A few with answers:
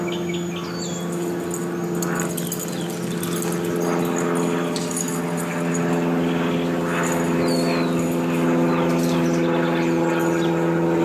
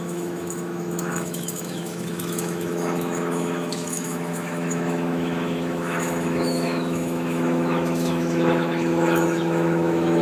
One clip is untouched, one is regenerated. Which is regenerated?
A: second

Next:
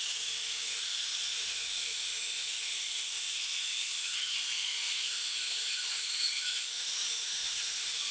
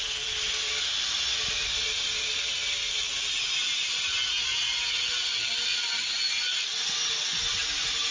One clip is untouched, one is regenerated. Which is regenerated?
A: first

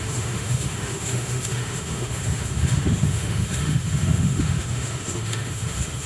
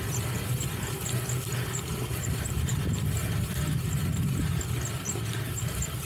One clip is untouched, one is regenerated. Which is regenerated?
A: first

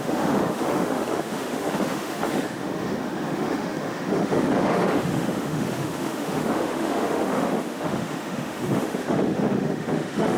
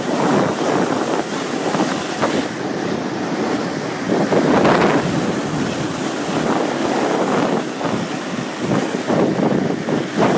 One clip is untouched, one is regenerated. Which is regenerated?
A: first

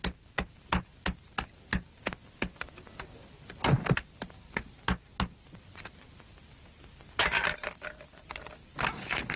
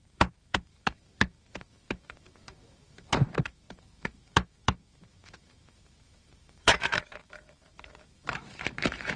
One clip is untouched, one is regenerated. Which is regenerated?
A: second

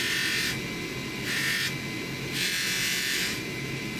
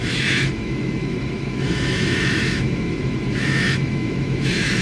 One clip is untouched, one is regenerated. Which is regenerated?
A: second